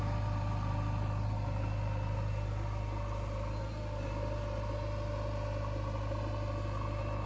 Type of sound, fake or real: real